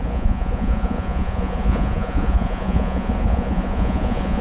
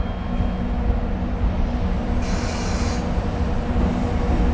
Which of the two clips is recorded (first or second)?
second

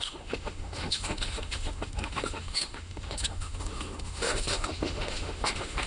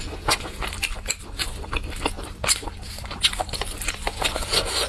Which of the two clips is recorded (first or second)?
second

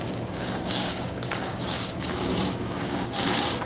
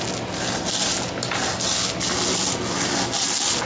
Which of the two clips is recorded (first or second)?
second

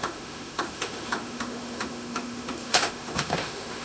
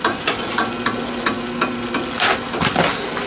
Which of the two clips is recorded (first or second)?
second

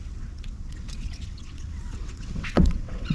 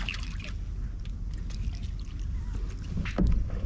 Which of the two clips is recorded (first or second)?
second